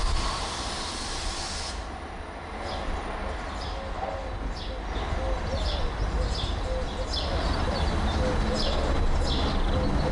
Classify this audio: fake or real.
real